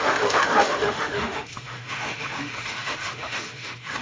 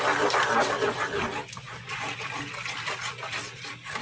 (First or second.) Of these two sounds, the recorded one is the second